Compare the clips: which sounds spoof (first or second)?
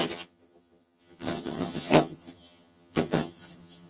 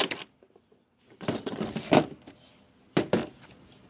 first